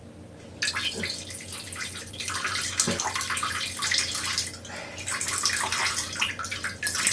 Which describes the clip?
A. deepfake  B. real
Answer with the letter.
B